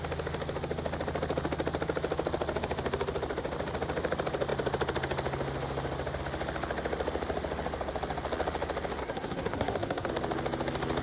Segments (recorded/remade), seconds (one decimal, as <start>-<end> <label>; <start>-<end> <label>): 0.0-9.0 recorded; 9.0-10.1 remade; 10.1-11.0 recorded